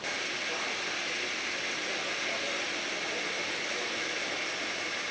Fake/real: real